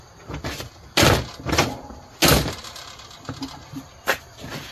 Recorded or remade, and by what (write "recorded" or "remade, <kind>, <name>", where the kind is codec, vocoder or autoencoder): recorded